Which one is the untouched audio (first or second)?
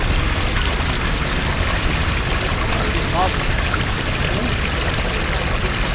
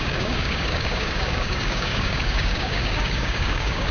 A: first